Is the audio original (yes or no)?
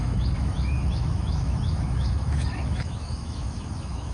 no